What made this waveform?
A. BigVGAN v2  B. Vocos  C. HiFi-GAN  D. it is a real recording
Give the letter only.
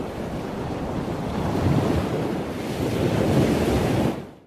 D